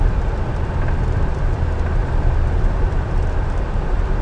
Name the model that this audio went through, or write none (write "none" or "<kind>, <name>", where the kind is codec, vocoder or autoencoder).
vocoder, BigVGAN v2